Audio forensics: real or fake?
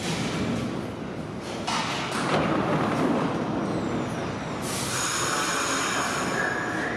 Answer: real